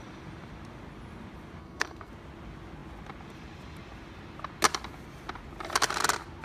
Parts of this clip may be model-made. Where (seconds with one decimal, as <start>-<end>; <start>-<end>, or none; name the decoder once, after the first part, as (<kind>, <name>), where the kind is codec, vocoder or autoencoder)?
1.6-2.1 (codec, SNAC)